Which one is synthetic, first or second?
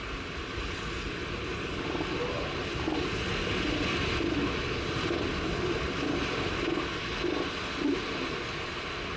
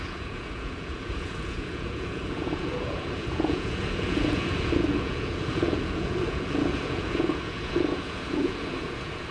second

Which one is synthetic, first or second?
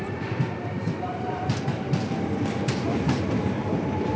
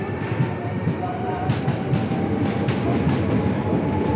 first